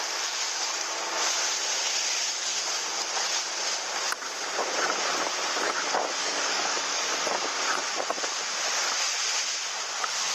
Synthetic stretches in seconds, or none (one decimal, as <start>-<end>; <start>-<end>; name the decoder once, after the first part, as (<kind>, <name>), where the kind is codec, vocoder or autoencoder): 6.2-7.0 (codec, DAC)